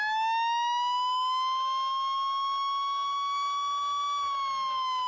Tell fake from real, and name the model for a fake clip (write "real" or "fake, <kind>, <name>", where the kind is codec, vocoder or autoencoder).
real